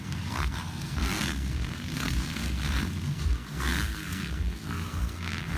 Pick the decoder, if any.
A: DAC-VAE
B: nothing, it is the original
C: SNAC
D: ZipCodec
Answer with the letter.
C